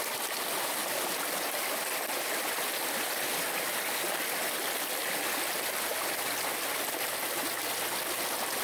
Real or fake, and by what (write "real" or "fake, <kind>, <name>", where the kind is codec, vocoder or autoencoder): real